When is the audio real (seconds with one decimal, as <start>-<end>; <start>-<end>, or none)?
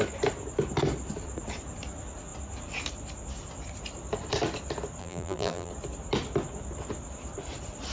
0.0-5.0; 5.7-7.9